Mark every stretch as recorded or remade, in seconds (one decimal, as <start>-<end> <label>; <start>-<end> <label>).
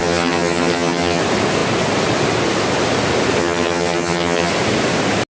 0.0-1.2 remade; 1.2-3.4 recorded; 3.4-4.5 remade; 4.5-5.3 recorded